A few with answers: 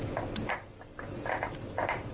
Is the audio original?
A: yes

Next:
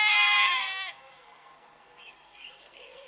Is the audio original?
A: no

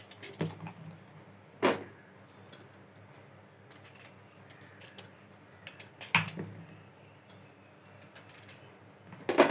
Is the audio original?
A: yes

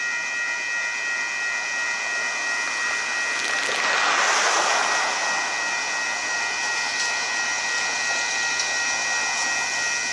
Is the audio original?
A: yes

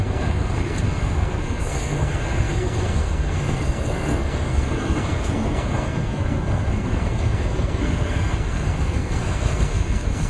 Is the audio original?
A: no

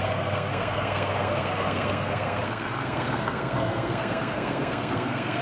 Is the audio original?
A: no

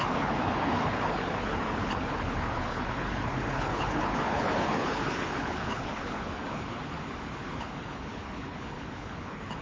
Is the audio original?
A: no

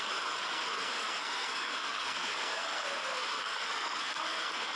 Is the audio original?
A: no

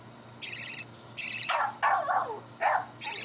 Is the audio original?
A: yes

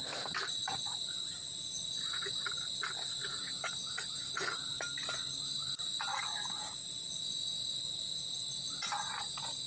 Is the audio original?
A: yes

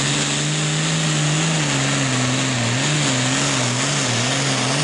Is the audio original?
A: yes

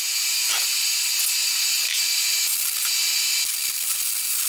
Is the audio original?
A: yes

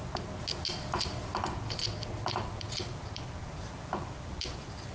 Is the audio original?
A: yes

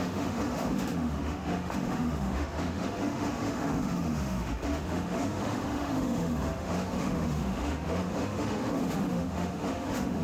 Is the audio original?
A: no